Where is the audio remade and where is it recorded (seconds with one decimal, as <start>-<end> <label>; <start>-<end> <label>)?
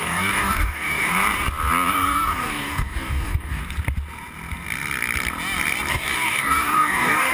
0.0-1.1 remade; 1.1-1.9 recorded; 1.9-3.6 remade; 3.6-5.9 recorded; 5.9-7.3 remade